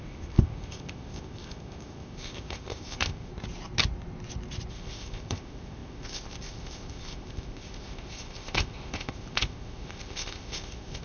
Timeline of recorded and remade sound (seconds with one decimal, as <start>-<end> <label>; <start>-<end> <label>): 0.0-3.3 remade; 3.3-4.7 recorded; 4.7-11.0 remade

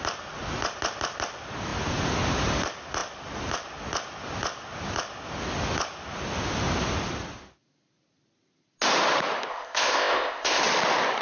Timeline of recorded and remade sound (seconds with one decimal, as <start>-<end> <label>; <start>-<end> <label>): 0.0-9.5 recorded; 9.5-10.6 remade; 10.6-11.2 recorded

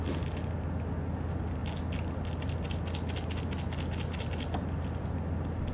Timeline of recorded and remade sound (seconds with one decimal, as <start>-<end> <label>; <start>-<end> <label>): 0.0-5.7 recorded

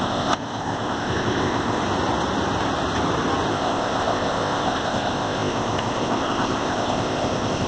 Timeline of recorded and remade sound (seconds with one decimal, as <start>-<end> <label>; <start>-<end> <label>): 0.0-1.8 remade; 1.8-3.5 recorded; 3.5-7.7 remade